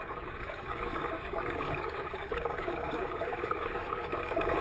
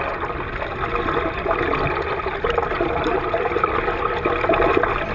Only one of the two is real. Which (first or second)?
second